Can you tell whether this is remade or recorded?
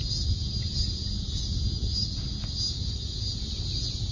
recorded